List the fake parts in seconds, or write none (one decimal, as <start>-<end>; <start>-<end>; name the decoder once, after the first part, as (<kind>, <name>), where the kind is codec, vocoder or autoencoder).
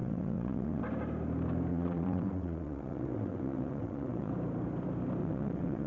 0.0-0.8 (vocoder, WaveNeXt); 1.7-4.3; 5.2-5.9